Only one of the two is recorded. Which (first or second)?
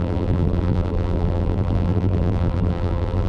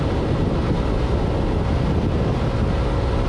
second